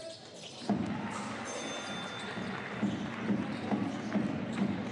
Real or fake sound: real